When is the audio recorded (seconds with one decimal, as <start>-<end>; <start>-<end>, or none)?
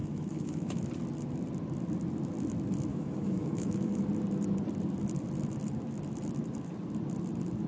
0.8-2.9; 4.0-7.7